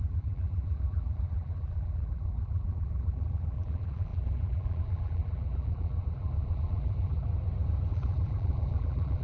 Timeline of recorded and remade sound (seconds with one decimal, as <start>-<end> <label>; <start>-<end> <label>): 0.0-7.3 remade; 7.3-7.9 recorded; 7.9-9.2 remade